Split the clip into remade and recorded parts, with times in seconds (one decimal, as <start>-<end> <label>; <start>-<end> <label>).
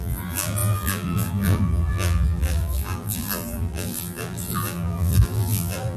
0.0-6.0 remade